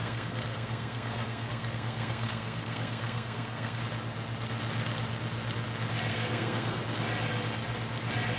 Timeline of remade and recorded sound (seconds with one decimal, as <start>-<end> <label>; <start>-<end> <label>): 0.0-3.8 remade; 3.8-6.1 recorded; 6.1-6.8 remade; 6.8-8.4 recorded